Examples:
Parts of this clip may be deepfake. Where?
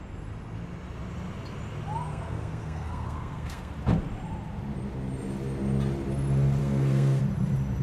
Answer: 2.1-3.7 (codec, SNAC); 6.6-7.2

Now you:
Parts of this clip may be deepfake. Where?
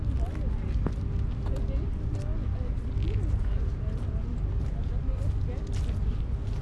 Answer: none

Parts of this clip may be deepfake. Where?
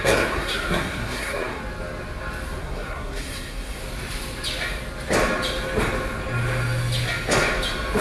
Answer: 0.0-1.6 (codec, SNAC); 2.6-3.8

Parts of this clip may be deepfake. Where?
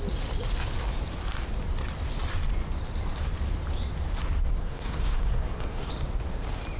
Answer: 4.6-5.9 (codec, SNAC)